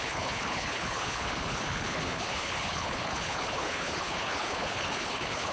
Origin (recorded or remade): remade